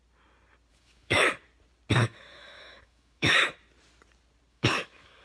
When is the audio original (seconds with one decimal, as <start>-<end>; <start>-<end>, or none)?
0.0-0.7; 1.3-2.0; 3.5-4.5